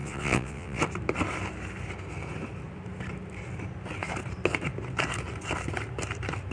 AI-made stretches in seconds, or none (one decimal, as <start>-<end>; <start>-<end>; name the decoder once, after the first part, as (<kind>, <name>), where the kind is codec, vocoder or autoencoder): 0.0-0.8 (vocoder, WaveNeXt)